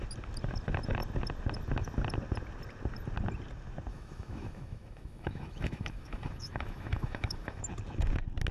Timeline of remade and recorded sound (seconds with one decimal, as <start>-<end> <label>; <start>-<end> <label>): 0.0-3.9 recorded; 3.9-7.6 remade; 7.6-8.5 recorded